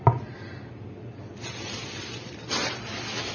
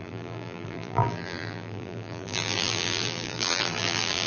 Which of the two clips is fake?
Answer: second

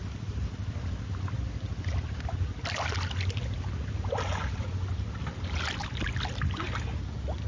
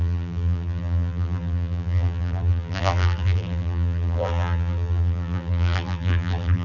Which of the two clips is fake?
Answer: second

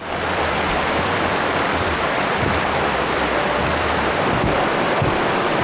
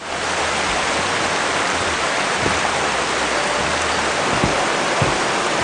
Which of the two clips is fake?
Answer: first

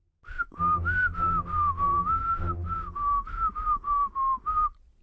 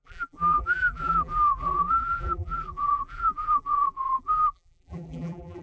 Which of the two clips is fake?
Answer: second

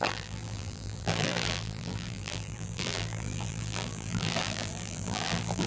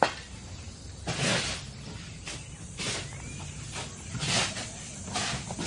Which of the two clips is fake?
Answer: first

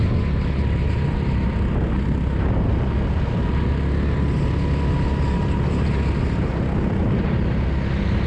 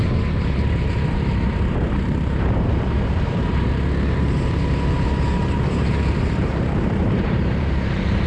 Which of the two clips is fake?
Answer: second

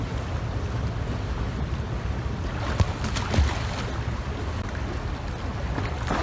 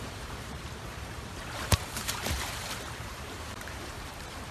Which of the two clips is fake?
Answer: second